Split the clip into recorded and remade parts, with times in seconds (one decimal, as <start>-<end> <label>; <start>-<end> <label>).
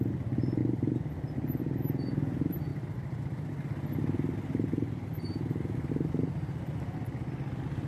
0.0-7.9 recorded